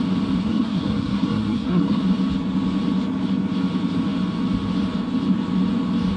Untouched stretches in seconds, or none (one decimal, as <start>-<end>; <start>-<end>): 0.0-0.4; 2.0-6.2